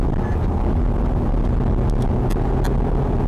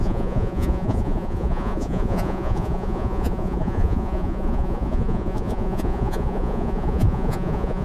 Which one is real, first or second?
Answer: first